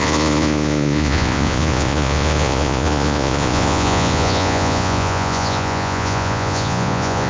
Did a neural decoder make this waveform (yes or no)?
yes